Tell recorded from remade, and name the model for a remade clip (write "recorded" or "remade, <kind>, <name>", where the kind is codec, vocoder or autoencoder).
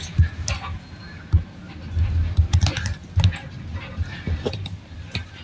recorded